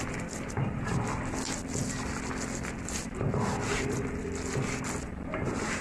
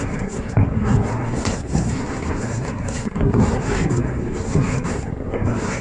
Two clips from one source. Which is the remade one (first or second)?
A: second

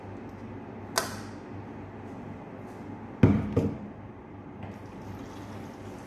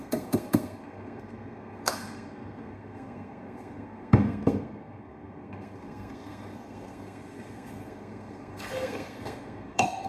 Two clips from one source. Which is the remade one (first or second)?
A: second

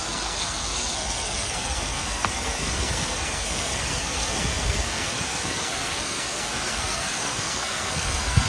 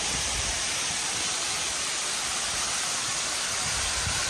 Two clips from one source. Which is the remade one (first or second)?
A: first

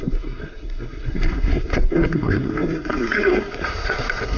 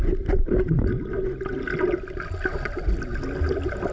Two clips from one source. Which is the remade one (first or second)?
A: first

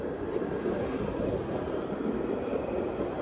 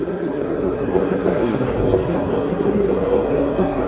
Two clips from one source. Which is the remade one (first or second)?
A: second